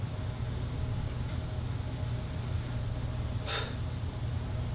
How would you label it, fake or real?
real